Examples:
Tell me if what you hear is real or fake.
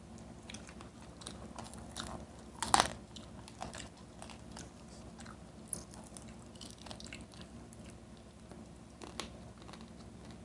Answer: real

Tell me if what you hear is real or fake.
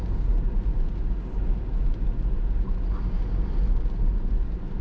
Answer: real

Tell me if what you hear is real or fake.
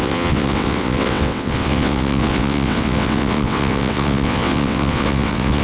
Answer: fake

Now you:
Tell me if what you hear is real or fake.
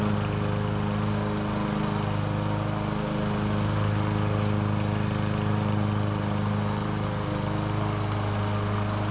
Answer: real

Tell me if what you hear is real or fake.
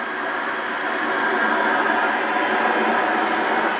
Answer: real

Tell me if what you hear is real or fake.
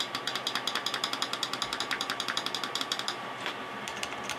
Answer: fake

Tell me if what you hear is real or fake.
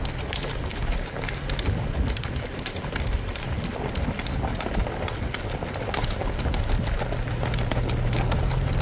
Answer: real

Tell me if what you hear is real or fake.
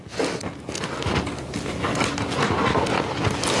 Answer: real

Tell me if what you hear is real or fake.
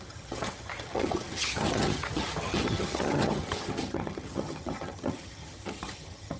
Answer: fake